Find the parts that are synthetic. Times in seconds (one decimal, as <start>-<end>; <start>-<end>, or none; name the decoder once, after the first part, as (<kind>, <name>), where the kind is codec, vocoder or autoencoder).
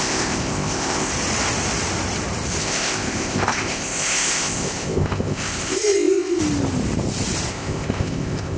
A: 0.0-1.1 (codec, ZipCodec); 2.6-6.4; 7.5-8.6